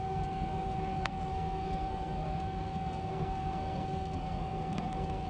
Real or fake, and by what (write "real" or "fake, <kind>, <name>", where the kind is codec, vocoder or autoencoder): fake, codec, SNAC